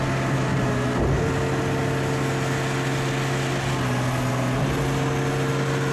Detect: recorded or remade recorded